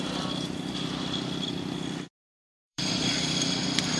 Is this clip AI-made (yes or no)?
yes